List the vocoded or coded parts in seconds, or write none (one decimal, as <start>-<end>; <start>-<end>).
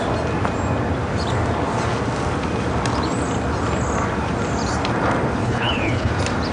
5.4-6.1